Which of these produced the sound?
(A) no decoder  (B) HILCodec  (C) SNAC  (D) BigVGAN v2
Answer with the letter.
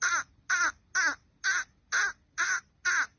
A